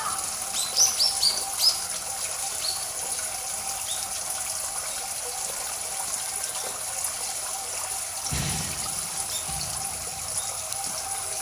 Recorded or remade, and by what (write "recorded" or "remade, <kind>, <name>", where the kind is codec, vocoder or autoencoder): recorded